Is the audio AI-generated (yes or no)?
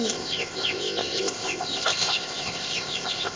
yes